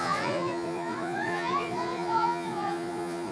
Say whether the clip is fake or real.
fake